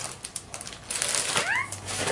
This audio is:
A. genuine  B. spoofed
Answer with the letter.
A